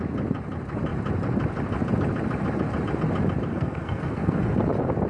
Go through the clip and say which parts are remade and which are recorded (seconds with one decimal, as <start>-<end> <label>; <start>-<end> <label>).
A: 0.0-3.5 recorded; 3.5-4.4 remade; 4.4-5.1 recorded